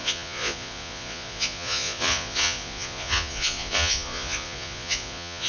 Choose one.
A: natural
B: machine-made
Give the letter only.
B